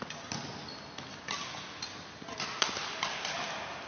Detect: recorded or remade recorded